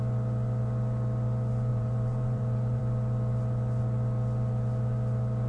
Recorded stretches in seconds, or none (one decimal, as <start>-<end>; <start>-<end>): 0.0-1.7; 2.8-5.5